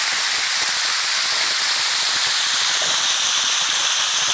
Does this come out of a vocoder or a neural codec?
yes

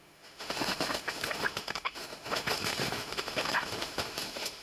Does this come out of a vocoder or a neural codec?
yes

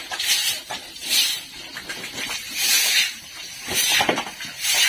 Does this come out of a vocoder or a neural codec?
yes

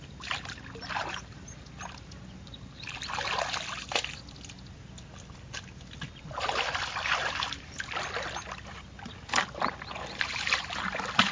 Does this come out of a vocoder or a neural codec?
no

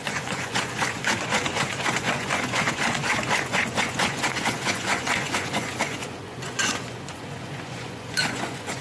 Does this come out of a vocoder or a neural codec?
yes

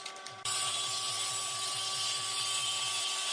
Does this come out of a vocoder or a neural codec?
no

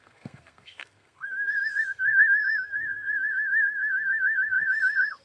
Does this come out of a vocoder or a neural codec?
yes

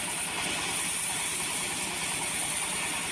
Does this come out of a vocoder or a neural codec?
no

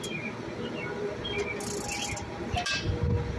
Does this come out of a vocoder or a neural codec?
no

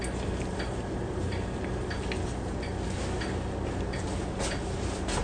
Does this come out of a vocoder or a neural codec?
no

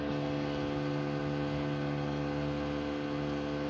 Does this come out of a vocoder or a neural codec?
no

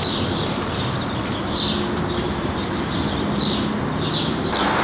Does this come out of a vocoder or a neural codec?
no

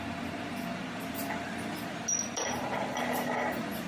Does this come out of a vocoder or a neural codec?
no